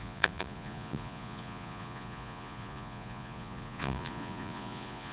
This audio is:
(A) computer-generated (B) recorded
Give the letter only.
A